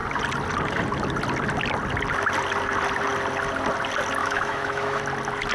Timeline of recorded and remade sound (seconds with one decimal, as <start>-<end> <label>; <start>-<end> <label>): 0.0-4.2 recorded; 4.2-5.0 remade; 5.0-5.5 recorded